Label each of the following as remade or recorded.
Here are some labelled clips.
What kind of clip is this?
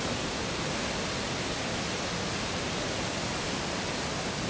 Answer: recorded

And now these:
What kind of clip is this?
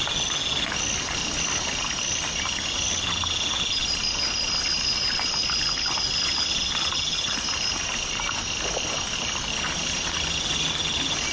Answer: recorded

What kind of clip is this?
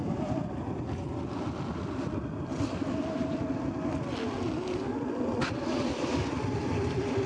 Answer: recorded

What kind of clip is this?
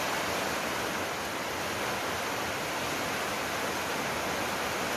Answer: recorded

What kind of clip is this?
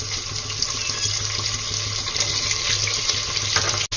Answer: recorded